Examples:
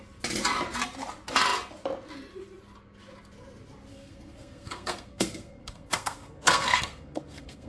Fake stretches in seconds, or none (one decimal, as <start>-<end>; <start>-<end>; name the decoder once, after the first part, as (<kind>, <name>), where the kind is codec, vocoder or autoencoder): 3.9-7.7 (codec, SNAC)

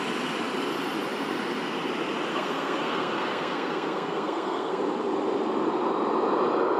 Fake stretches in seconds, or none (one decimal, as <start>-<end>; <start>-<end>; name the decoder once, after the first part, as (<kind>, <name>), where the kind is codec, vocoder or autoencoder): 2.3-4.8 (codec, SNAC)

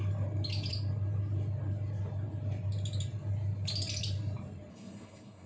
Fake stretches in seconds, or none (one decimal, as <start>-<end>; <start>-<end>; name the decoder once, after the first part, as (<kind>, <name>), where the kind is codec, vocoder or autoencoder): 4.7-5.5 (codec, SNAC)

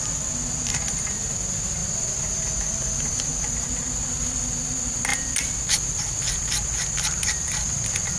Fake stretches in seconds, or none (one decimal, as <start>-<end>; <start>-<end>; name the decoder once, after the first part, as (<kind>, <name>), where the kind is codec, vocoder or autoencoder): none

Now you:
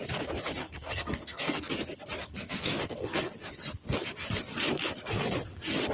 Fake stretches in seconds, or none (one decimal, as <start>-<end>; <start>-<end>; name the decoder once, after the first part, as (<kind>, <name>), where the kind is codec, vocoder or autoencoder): 0.6-1.7 (codec, SNAC); 2.2-3.3

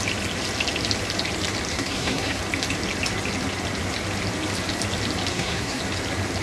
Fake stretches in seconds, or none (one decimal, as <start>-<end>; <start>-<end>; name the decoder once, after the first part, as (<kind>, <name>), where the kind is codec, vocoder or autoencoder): 1.7-2.4 (codec, SNAC); 5.3-5.8

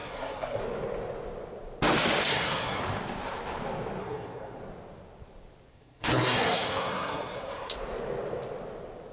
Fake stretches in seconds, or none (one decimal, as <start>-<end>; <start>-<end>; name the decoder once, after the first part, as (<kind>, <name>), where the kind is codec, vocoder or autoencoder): 0.0-0.6 (codec, SNAC); 2.3-2.8; 4.0-4.6; 5.7-7.7

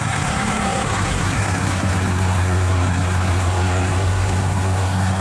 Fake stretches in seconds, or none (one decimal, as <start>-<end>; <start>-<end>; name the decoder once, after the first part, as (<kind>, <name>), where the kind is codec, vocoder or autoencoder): 0.0-5.2 (codec, SNAC)